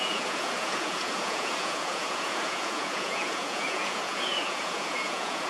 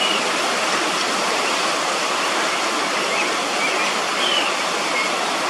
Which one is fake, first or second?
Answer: first